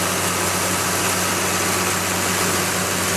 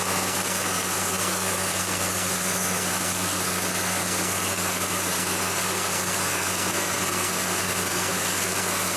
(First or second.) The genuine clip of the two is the first